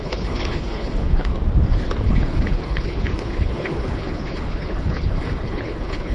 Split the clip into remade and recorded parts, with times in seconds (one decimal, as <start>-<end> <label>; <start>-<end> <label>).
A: 0.0-1.3 remade; 1.3-2.1 recorded; 2.1-6.1 remade